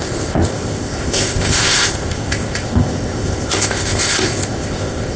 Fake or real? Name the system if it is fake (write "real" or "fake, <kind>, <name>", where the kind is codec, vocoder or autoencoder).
fake, codec, ZipCodec